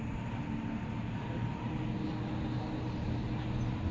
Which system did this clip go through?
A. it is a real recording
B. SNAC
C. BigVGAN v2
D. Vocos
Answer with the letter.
A